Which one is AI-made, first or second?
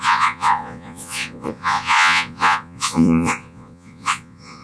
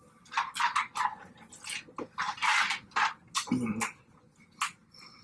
first